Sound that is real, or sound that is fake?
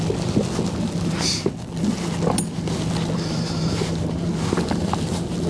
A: real